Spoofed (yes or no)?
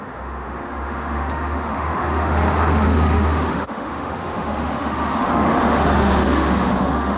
yes